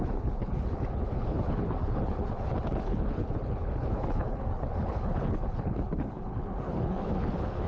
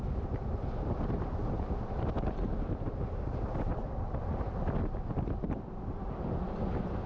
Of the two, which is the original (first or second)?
second